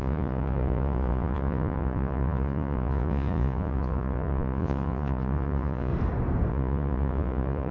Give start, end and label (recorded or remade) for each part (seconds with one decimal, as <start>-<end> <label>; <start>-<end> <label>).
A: 0.0-5.9 remade; 5.9-6.5 recorded; 6.5-7.7 remade